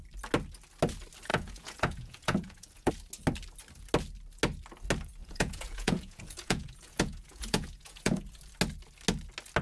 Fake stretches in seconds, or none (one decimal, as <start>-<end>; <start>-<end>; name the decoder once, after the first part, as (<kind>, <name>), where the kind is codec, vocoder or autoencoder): 1.3-2.9 (vocoder, Vocos); 5.2-8.4